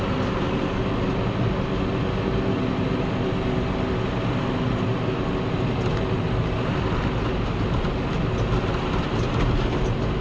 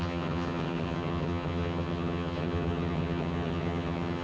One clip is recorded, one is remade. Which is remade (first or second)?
second